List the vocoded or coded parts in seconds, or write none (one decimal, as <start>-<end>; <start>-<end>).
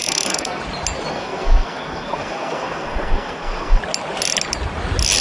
0.0-0.6; 1.1-3.8